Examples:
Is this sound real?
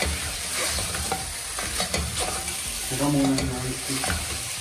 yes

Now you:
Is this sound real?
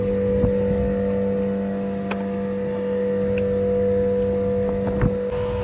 yes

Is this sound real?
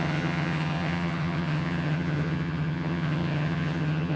no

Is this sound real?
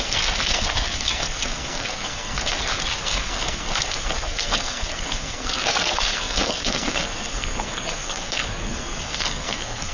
no